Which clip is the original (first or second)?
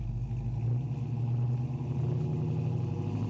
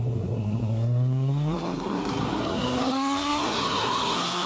first